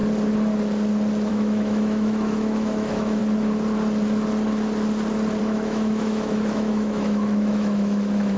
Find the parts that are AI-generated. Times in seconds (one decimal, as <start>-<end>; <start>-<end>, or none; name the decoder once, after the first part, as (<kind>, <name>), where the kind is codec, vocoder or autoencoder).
1.3-3.2 (autoencoder, DAC-VAE); 5.4-8.4